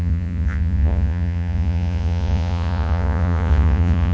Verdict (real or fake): fake